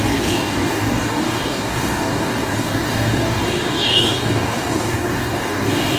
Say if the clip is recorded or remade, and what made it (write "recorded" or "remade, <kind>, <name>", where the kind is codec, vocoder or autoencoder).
remade, codec, DAC